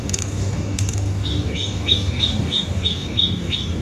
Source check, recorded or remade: remade